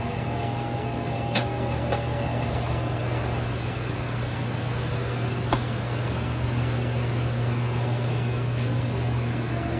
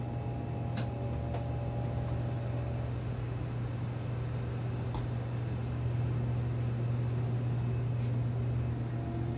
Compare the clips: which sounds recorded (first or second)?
second